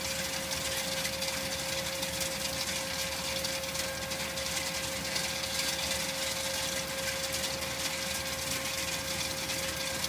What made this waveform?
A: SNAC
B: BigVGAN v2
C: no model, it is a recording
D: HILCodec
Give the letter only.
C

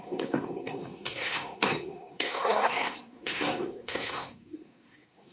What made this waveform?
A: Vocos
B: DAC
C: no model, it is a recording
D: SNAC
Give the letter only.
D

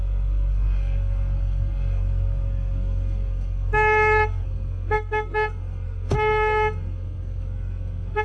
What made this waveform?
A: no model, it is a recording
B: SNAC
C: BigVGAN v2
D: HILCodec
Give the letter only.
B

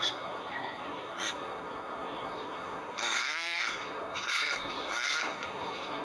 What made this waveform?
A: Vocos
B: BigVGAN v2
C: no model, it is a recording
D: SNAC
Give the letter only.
D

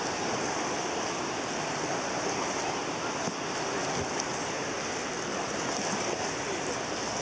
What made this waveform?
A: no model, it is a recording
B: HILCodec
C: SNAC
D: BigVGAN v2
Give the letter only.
A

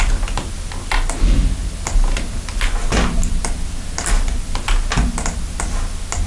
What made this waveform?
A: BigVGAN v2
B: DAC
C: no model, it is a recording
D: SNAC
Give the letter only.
C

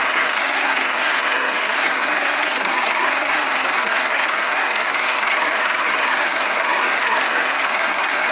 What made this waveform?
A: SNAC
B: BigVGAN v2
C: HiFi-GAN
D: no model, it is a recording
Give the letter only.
A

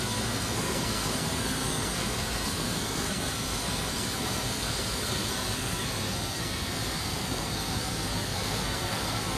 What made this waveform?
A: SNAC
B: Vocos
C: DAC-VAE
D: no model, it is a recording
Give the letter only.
A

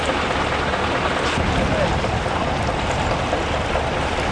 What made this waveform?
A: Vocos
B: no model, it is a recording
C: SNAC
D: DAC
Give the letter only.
B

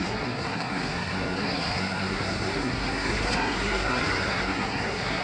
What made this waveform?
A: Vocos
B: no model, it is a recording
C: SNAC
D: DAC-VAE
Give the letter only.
C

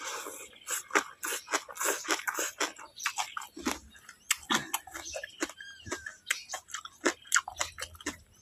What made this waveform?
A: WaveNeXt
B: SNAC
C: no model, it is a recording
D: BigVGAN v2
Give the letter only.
C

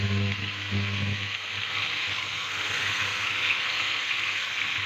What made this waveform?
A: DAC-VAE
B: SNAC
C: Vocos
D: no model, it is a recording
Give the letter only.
B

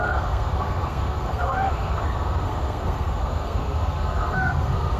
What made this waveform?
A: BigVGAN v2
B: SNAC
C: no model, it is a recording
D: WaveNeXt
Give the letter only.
B